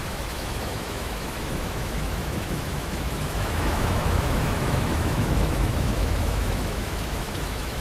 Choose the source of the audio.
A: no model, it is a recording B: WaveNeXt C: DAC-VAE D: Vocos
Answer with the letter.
C